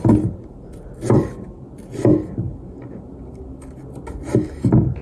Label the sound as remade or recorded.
recorded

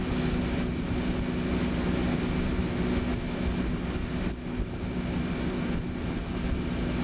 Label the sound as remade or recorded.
recorded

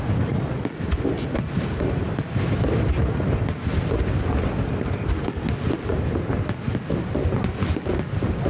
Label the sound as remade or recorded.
recorded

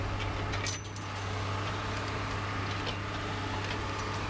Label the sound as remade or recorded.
recorded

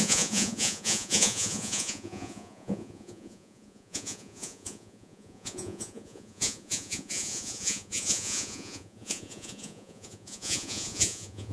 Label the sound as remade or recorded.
remade